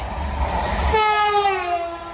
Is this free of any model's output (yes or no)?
yes